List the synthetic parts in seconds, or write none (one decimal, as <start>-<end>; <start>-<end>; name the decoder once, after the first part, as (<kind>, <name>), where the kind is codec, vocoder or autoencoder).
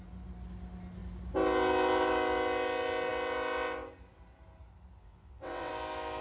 5.0-5.7 (vocoder, WaveNeXt)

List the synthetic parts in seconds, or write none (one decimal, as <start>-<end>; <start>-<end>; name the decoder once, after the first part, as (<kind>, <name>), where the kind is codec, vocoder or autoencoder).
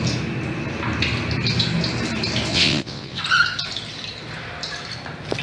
2.5-3.2 (vocoder, WaveNeXt)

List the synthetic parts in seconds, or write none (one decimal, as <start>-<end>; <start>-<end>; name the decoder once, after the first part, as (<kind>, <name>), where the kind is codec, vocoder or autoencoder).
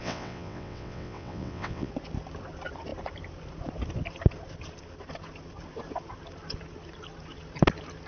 0.0-1.9 (vocoder, WaveNeXt)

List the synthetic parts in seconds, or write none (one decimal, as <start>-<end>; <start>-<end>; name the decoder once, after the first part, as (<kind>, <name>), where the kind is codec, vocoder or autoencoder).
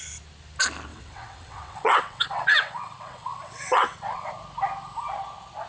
0.9-4.3 (vocoder, WaveNeXt)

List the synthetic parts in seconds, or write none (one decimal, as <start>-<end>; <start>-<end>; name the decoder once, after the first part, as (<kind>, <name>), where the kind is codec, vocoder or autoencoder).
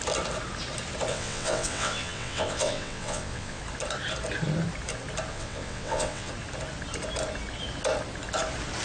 1.1-3.6 (vocoder, WaveNeXt); 5.3-6.3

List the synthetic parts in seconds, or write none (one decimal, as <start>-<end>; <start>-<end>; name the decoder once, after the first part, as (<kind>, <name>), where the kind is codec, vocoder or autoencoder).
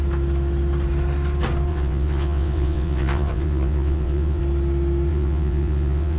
1.7-4.4 (vocoder, WaveNeXt); 5.1-6.2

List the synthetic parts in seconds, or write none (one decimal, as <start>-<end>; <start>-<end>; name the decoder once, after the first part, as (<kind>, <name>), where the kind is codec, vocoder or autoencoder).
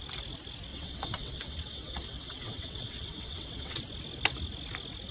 0.7-3.8 (vocoder, WaveNeXt)